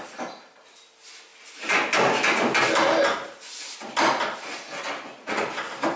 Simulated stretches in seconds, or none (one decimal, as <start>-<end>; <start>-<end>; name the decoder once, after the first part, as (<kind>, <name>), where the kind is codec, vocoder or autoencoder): none